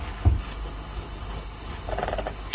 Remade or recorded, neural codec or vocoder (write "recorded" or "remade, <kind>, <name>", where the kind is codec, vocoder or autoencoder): remade, codec, HILCodec